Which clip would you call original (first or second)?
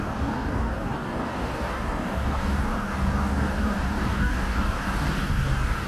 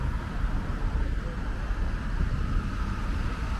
second